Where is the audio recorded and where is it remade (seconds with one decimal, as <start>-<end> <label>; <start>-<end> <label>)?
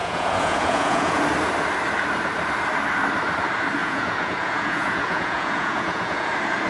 0.0-1.2 remade; 1.2-3.8 recorded; 3.8-6.3 remade; 6.3-6.7 recorded